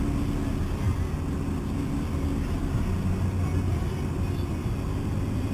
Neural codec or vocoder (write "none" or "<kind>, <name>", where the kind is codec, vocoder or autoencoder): none